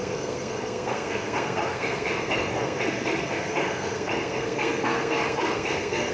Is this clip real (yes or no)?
no